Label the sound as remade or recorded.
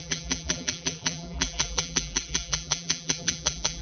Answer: remade